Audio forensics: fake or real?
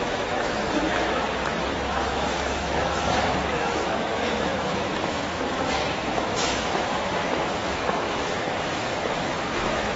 fake